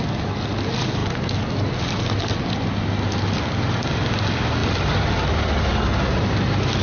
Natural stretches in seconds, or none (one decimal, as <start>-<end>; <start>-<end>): 0.0-6.8